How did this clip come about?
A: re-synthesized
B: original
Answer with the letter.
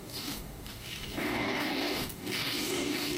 A